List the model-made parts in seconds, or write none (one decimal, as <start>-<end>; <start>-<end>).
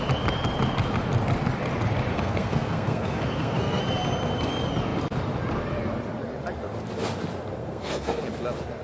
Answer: 2.1-3.8; 7.6-8.2